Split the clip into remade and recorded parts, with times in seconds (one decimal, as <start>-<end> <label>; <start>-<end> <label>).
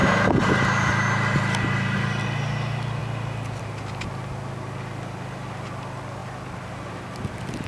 0.0-7.7 recorded